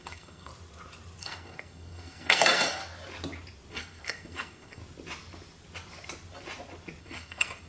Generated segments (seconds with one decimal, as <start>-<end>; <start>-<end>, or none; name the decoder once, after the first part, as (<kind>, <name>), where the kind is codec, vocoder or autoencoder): 0.0-0.5 (codec, SNAC); 1.2-2.8; 3.7-4.8; 7.0-7.7